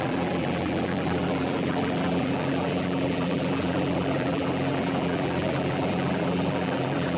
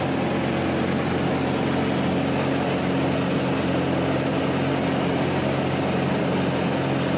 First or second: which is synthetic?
first